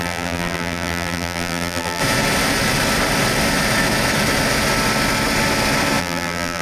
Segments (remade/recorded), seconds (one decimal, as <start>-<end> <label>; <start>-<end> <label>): 0.0-2.0 remade; 2.0-6.0 recorded; 6.0-6.6 remade